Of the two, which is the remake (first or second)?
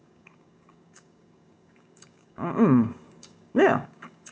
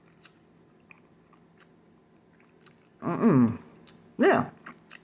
first